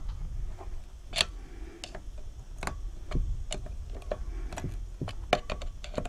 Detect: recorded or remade recorded